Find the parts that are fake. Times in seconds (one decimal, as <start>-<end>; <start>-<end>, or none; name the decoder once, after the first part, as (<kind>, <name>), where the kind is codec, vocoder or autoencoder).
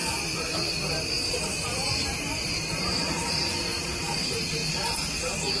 0.0-3.4 (vocoder, BigVGAN v2)